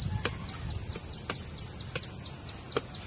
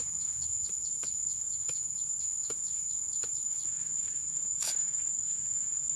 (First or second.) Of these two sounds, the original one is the first